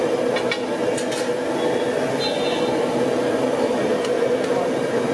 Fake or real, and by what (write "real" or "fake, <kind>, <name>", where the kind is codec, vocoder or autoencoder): real